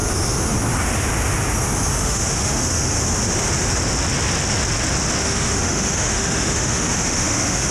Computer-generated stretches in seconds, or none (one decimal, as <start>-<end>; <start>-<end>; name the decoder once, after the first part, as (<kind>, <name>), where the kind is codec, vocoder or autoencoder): 1.9-3.0 (autoencoder, DAC-VAE); 5.2-7.7